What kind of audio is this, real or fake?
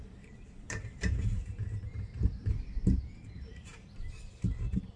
fake